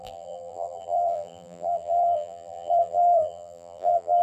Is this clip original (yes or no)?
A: no